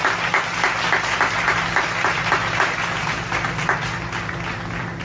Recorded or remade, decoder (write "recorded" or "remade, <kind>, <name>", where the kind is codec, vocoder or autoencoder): recorded